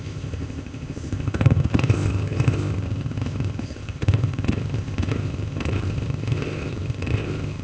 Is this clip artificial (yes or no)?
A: yes